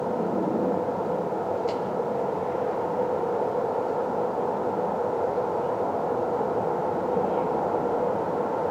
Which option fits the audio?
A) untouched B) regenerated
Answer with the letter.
A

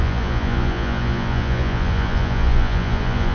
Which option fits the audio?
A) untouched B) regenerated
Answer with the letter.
B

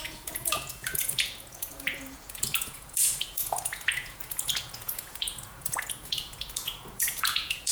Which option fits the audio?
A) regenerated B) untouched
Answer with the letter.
A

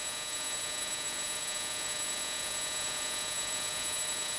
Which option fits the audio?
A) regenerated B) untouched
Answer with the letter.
A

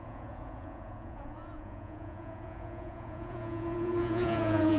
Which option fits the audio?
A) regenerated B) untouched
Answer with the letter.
A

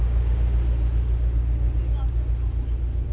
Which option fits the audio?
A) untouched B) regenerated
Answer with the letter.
A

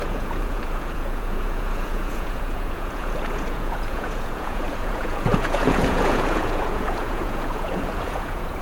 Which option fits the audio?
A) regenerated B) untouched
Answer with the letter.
A